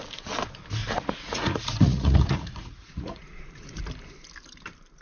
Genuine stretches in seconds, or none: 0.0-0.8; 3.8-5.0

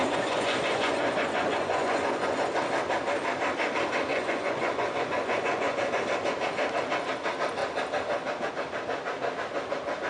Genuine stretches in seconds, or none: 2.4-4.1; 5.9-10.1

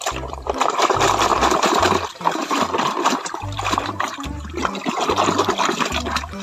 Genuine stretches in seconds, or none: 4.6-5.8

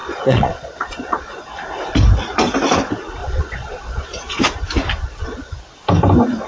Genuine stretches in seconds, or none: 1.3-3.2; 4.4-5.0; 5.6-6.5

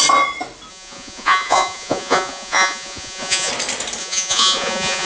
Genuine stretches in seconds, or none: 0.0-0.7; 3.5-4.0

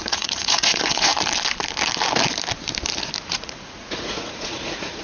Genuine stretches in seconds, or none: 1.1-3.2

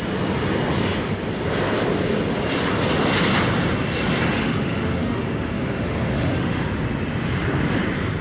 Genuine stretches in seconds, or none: 0.0-4.3; 6.7-8.2